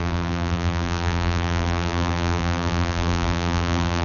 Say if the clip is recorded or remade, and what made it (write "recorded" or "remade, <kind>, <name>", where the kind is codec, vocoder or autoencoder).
remade, vocoder, BigVGAN v2